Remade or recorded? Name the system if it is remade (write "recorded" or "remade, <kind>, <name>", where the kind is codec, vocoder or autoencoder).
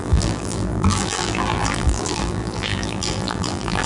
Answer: remade, vocoder, BigVGAN v2